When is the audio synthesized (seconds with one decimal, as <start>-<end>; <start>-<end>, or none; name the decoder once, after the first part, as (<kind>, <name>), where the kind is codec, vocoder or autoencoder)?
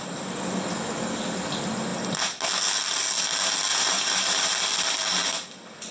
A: 3.7-4.4 (vocoder, BigVGAN v2)